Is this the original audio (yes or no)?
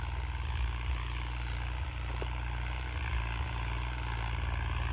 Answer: yes